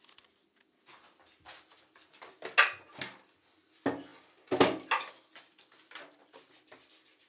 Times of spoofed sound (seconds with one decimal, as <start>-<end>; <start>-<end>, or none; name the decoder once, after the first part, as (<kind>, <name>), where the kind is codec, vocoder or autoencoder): none